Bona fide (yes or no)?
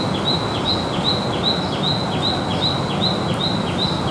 yes